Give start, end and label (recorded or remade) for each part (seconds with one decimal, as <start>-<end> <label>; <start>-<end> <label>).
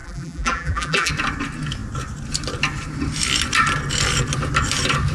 0.0-1.1 remade; 1.1-5.1 recorded